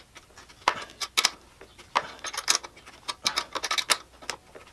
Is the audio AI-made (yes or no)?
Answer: no